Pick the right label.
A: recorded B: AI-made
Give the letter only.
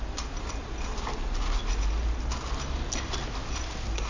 A